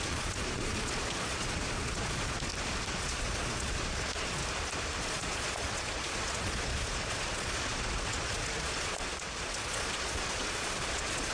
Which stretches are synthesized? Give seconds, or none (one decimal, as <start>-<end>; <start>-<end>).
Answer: 0.0-2.5; 3.0-4.4; 5.0-11.3